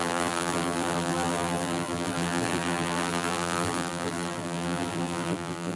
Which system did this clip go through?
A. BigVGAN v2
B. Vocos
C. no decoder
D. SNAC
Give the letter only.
A